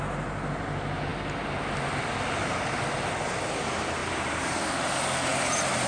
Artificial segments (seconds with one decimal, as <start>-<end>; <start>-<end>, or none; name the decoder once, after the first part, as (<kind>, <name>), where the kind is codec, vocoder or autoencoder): 4.0-4.6 (vocoder, BigVGAN v2); 5.3-5.9